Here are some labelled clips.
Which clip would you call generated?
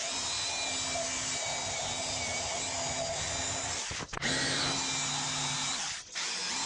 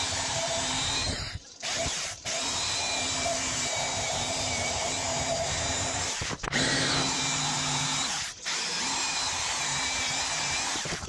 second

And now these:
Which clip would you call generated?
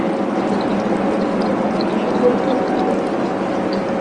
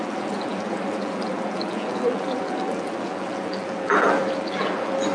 second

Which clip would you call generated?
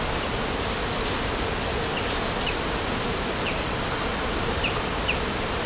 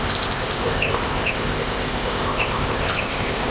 second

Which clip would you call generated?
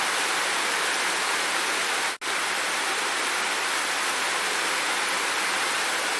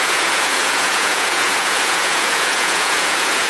second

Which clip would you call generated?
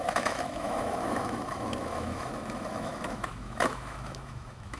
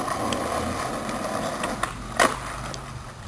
first